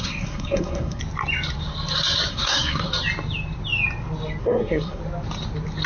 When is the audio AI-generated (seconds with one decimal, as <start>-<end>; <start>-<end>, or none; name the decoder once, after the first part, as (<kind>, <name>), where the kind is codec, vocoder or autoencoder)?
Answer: 0.0-1.0 (codec, SNAC); 2.3-2.9; 4.4-5.0